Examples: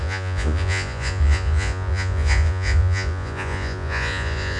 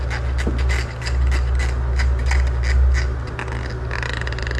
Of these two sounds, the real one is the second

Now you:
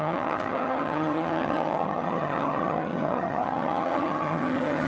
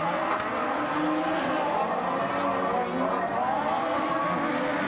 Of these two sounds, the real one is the second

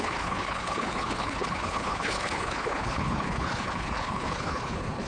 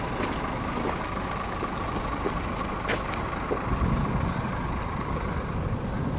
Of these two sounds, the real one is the second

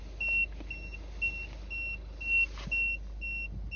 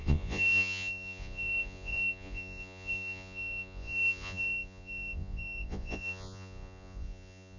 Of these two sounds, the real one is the first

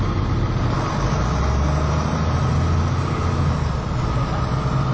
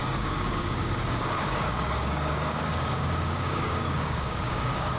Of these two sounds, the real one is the first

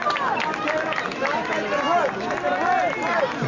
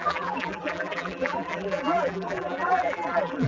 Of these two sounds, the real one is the first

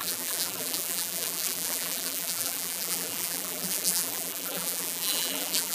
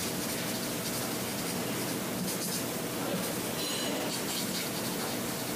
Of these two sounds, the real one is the second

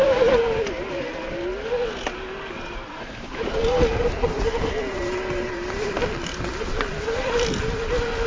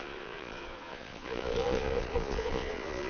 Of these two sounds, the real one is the first